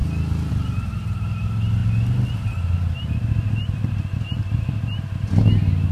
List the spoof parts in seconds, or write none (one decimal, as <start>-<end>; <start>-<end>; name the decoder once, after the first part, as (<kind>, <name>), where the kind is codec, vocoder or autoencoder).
none